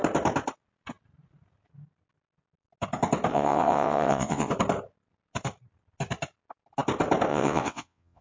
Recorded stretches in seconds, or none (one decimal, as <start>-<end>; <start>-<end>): 0.0-3.3; 4.5-7.3